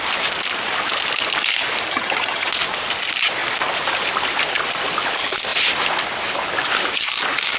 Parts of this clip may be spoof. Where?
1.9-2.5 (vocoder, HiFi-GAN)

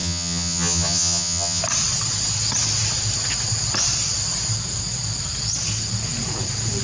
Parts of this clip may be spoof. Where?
0.0-1.6 (vocoder, HiFi-GAN)

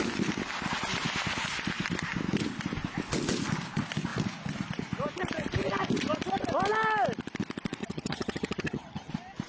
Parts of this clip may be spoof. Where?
7.8-9.1 (vocoder, HiFi-GAN)

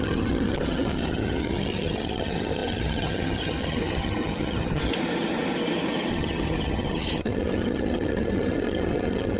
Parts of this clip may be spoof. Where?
0.0-4.9 (vocoder, HiFi-GAN); 6.1-9.4

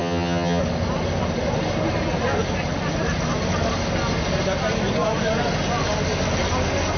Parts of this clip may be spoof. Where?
0.0-0.6 (vocoder, HiFi-GAN)

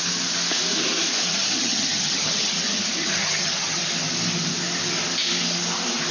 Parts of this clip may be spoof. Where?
1.3-3.8 (vocoder, HiFi-GAN)

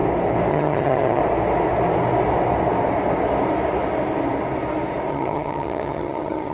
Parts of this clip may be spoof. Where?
0.5-1.2 (vocoder, HiFi-GAN); 5.1-6.5